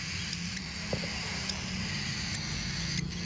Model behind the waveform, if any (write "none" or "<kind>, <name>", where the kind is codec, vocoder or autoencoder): none